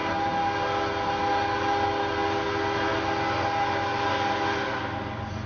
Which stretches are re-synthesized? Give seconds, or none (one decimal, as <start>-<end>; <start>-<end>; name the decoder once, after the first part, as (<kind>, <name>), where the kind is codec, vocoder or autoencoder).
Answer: none

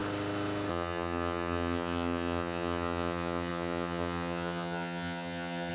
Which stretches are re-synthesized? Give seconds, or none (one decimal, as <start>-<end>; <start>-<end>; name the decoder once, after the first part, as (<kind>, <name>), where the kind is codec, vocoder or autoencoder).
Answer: 0.7-5.7 (vocoder, HiFi-GAN)

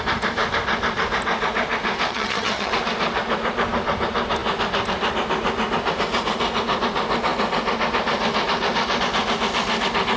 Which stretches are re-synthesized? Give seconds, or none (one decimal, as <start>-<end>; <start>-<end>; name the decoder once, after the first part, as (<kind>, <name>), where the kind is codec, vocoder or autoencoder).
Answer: 2.1-2.7 (vocoder, HiFi-GAN)

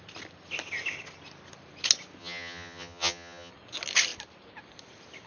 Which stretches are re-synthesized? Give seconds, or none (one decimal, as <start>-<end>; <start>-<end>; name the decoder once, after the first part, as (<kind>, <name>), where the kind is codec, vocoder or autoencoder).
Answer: 2.2-3.5 (vocoder, HiFi-GAN)

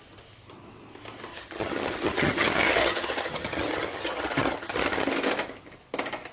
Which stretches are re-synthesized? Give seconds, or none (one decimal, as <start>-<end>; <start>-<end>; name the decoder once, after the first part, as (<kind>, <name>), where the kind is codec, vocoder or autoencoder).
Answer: 1.3-5.1 (vocoder, HiFi-GAN)

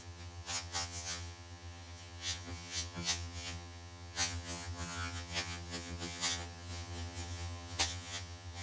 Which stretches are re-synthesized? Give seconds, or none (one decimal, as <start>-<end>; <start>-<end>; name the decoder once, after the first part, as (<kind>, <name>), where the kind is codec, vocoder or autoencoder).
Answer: 0.0-8.6 (vocoder, HiFi-GAN)

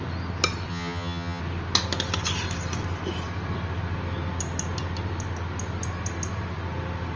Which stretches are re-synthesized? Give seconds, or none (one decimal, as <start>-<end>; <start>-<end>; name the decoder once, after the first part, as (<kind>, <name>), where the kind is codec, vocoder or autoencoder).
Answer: 0.7-1.4 (vocoder, HiFi-GAN)